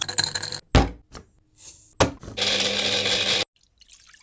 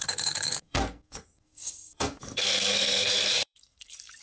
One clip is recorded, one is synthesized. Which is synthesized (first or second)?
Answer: second